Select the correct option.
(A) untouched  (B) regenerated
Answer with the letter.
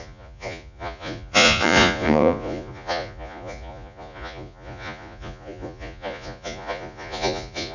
B